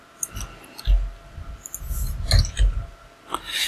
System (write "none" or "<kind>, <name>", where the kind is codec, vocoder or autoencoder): none